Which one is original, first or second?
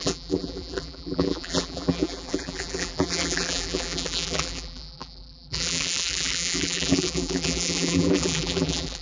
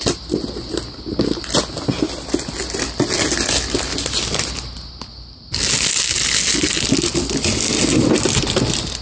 second